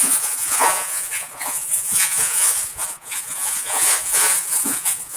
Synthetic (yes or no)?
yes